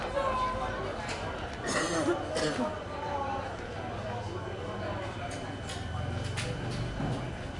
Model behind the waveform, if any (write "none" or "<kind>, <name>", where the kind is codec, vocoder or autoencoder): none